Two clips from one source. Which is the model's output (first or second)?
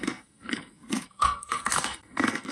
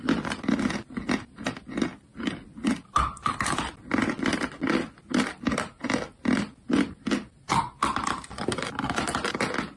first